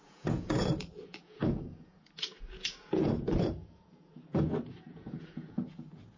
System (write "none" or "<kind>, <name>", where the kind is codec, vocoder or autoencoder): vocoder, Vocos